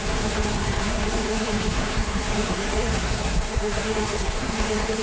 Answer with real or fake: fake